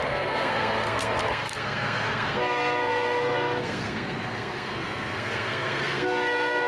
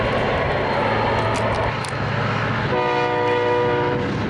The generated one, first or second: first